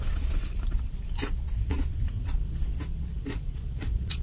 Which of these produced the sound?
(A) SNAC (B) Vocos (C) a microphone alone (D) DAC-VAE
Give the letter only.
B